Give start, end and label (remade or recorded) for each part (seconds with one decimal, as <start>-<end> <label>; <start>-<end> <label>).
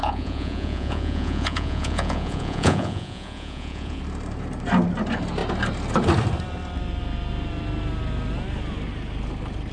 0.0-4.0 remade; 4.0-9.7 recorded